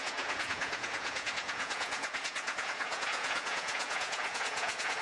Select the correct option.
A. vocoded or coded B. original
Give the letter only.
A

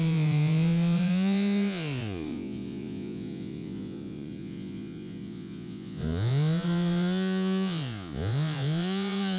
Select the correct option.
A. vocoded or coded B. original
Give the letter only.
A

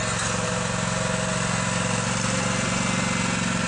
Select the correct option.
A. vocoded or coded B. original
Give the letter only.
B